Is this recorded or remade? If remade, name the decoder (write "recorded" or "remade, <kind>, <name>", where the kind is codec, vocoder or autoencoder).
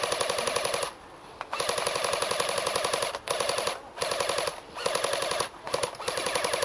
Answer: recorded